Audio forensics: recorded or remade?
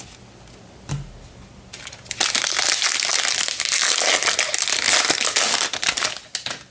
recorded